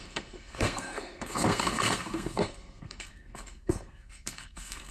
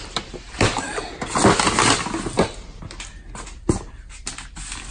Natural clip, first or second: second